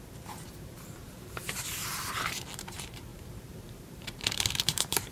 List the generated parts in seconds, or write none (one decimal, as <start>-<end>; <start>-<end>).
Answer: 0.0-5.1

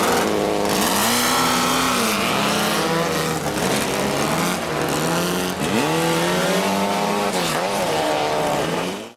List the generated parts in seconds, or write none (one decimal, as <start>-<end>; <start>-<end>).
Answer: 6.4-9.2

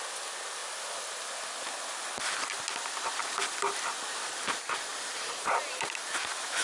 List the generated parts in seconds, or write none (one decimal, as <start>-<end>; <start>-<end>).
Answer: 4.9-6.6